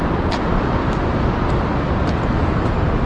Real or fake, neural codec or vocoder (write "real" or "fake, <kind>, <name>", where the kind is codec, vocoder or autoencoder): real